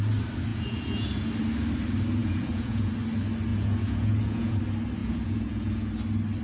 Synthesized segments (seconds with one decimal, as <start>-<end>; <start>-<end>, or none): 0.5-1.3; 2.2-2.9; 3.5-4.6; 5.0-5.9